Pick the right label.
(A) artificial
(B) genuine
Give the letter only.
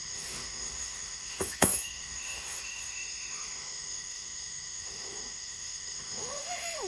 A